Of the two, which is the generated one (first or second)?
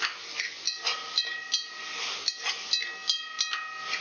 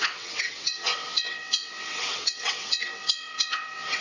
second